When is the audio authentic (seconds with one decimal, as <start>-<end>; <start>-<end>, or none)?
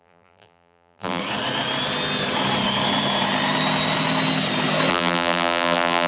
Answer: 1.2-4.9